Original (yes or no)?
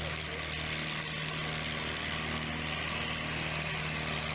yes